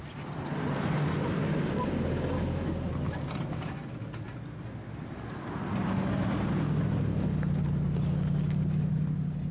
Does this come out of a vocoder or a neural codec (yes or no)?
no